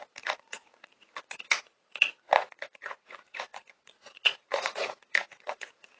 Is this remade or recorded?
remade